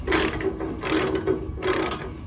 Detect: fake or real real